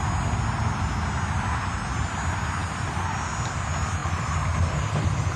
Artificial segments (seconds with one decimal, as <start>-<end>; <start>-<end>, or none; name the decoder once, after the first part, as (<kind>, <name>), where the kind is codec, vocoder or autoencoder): 4.0-5.4 (vocoder, BigVGAN v2)